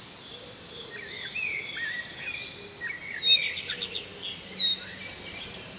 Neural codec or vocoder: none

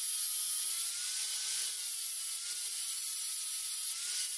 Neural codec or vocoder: none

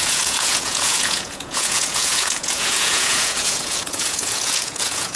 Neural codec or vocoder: vocoder, Vocos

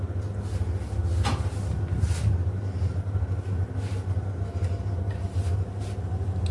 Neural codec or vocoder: none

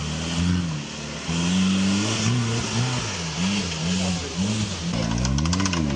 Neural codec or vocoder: none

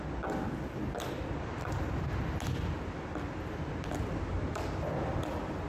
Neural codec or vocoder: none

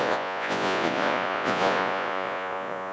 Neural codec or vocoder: vocoder, Vocos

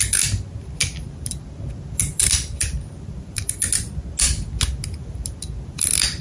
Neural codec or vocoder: none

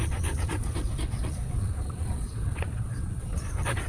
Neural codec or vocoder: vocoder, Vocos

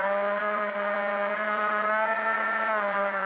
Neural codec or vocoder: vocoder, Vocos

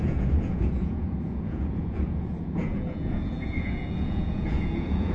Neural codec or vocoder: vocoder, Vocos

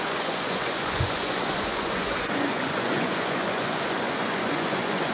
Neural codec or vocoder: vocoder, Vocos